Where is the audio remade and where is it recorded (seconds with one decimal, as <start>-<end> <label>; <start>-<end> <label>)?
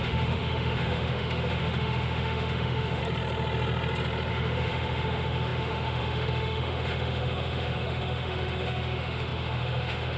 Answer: 0.0-3.0 remade; 3.0-4.3 recorded; 4.3-10.2 remade